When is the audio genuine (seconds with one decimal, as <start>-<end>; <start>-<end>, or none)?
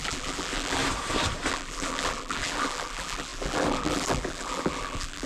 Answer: 0.8-1.5